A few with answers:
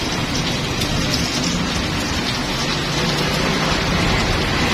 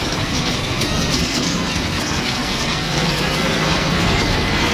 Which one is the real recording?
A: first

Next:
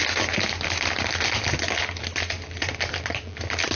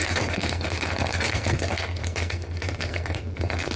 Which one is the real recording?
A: first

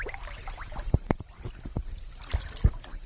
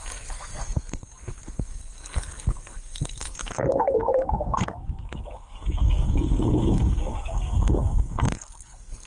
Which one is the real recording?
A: first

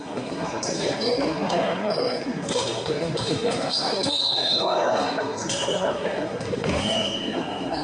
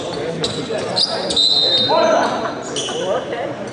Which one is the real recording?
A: second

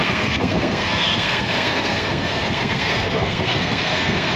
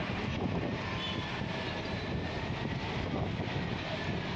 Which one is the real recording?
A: second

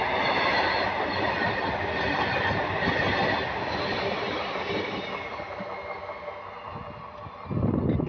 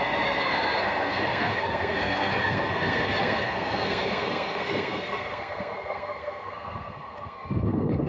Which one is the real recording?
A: first